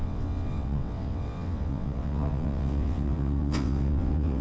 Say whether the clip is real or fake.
fake